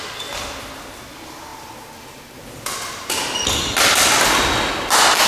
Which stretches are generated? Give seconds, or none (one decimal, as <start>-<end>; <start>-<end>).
none